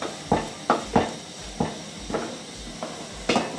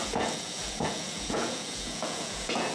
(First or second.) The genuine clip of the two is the first